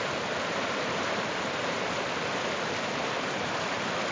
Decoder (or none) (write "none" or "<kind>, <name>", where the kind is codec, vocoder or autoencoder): none